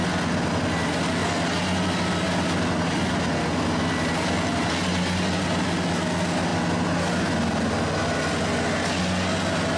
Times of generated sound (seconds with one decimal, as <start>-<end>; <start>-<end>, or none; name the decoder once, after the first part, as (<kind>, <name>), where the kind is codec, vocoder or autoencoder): none